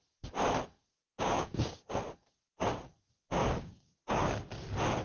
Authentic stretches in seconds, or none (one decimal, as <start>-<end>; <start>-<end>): 0.0-1.0; 1.9-3.4; 4.3-5.0